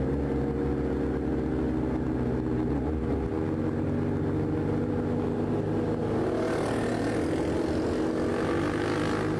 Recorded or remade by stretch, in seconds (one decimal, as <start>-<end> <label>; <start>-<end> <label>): 0.0-9.4 recorded